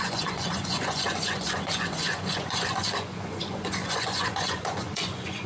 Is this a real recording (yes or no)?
no